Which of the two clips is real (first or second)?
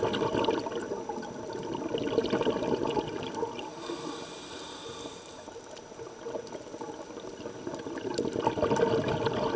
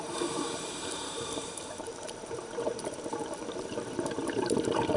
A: first